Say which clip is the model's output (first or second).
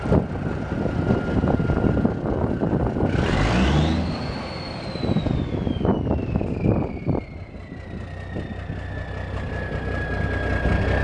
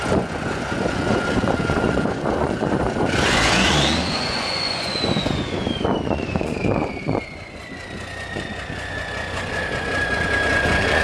second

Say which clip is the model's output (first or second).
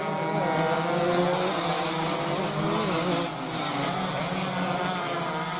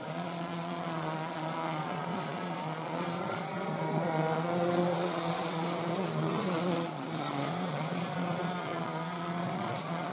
second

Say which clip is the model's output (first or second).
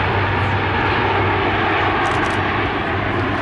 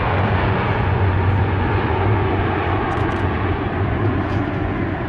second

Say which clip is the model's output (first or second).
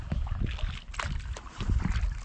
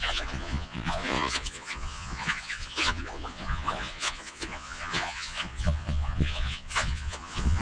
second